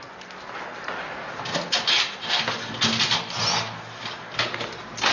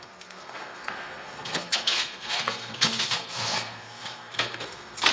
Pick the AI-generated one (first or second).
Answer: second